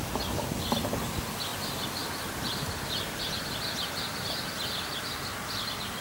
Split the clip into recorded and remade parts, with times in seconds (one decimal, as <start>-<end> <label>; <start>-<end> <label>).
0.0-1.5 recorded; 1.5-2.9 remade; 2.9-6.0 recorded